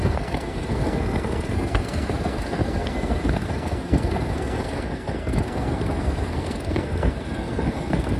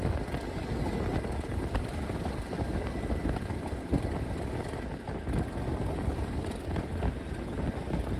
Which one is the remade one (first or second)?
first